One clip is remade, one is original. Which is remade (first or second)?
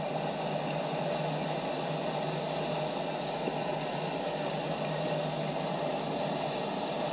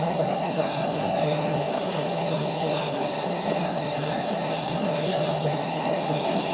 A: second